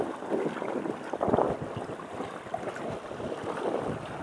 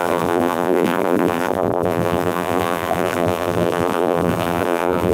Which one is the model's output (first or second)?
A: second